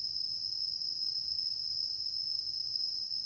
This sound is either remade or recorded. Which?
remade